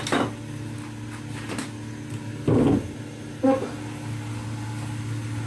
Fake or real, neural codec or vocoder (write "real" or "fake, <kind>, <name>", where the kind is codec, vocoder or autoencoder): real